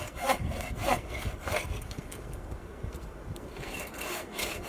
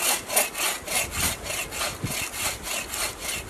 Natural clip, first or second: second